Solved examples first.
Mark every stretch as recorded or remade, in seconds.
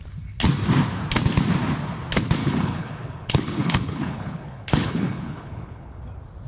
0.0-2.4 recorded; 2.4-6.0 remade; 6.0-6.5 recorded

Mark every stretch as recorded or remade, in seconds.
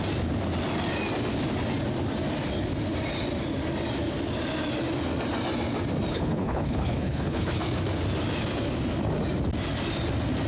0.0-6.1 recorded; 6.1-7.6 remade; 7.6-10.5 recorded